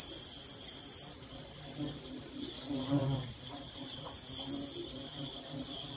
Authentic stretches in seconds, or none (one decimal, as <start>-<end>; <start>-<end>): 0.0-1.1; 4.1-4.8